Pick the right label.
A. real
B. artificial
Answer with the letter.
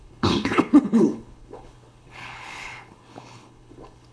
B